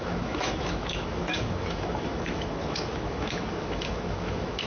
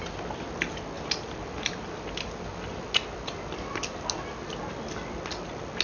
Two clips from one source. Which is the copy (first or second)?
first